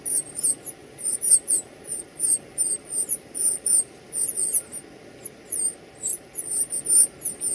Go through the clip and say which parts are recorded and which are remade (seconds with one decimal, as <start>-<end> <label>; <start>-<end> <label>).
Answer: 0.0-0.8 recorded; 0.8-4.0 remade; 4.0-6.1 recorded; 6.1-6.7 remade; 6.7-7.5 recorded